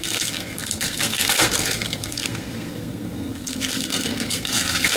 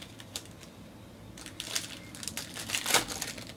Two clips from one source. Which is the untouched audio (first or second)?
second